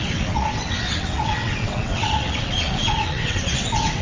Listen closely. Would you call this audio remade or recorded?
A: remade